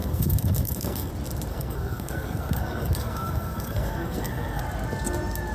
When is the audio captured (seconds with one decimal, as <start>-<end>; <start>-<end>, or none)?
1.1-1.5; 4.6-5.5